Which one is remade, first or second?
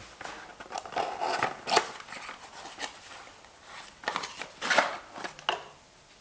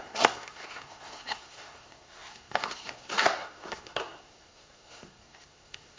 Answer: second